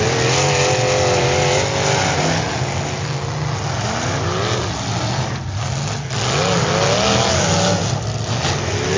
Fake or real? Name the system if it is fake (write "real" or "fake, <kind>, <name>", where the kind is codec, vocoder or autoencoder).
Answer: real